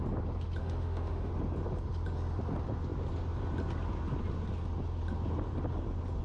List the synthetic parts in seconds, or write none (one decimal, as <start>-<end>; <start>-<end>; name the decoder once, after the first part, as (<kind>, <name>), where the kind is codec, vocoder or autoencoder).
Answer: 0.6-1.3 (autoencoder, DAC-VAE)